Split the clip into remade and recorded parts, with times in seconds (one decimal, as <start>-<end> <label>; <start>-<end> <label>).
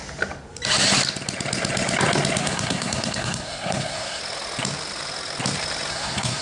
0.0-2.4 recorded; 2.4-4.2 remade; 4.2-5.9 recorded; 5.9-6.4 remade